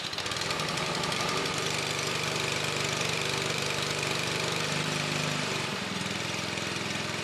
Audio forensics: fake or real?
fake